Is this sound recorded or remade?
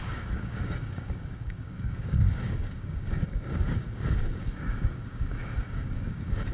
remade